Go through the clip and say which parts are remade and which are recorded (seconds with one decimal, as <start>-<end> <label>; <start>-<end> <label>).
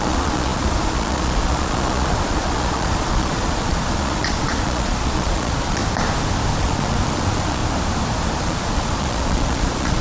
0.0-5.8 remade; 5.8-6.6 recorded; 6.6-7.6 remade; 7.6-8.4 recorded; 8.4-10.0 remade